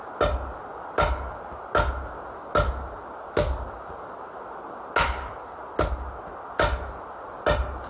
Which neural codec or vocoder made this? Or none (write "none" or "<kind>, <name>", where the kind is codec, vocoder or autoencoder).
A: none